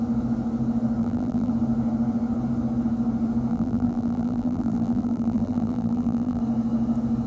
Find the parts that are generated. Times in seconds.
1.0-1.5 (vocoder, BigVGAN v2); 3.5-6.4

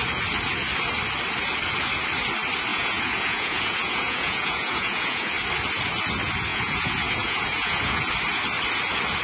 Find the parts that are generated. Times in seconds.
2.7-5.3 (vocoder, Vocos); 6.5-8.1

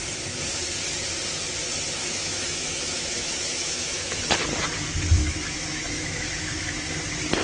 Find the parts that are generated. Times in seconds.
2.0-4.2 (autoencoder, DAC-VAE); 5.2-6.9

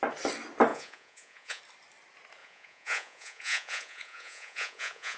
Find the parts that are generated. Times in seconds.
0.7-1.6 (vocoder, Vocos); 2.4-5.2